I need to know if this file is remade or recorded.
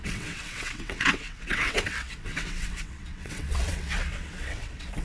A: remade